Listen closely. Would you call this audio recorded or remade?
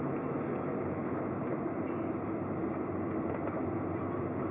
recorded